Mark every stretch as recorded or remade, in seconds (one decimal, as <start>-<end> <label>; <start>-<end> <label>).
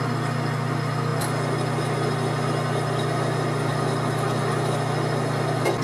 0.0-5.8 recorded